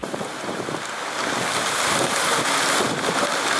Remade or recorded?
recorded